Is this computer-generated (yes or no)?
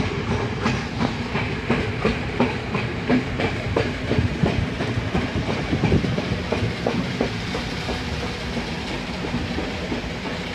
yes